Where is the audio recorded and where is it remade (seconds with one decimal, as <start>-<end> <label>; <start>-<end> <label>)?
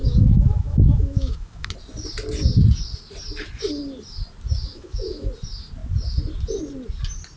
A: 0.0-1.7 remade; 1.7-4.7 recorded; 4.7-5.3 remade; 5.3-7.4 recorded